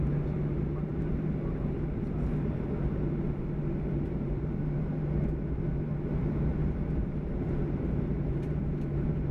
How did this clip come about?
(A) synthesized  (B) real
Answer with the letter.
A